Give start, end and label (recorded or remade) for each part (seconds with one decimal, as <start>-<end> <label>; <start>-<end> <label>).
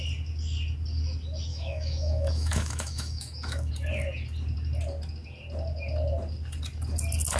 0.0-1.5 recorded; 1.5-3.7 remade; 3.7-7.4 recorded